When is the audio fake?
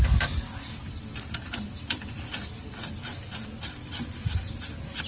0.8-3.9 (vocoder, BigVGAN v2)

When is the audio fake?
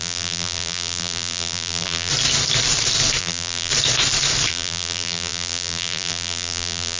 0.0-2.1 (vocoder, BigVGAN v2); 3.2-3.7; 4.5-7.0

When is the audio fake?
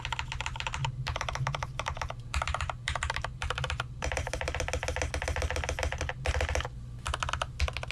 0.8-4.5 (vocoder, BigVGAN v2)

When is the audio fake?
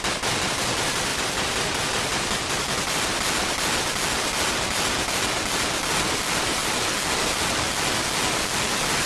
1.1-3.2 (vocoder, BigVGAN v2); 6.6-7.1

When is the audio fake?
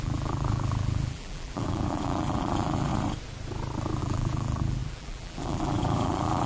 0.0-2.9 (vocoder, BigVGAN v2); 4.0-6.5